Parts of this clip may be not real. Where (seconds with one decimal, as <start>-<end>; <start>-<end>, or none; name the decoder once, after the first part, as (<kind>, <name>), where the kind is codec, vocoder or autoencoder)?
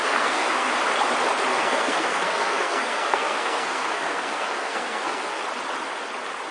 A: 0.0-0.7 (codec, SNAC); 1.5-5.4